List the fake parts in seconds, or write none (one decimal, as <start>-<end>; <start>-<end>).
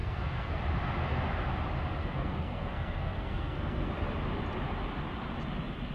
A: 0.0-0.6; 2.0-3.9